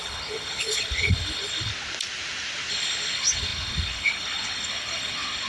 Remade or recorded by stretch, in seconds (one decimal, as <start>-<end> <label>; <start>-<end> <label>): 0.0-1.7 remade; 1.7-2.7 recorded; 2.7-5.5 remade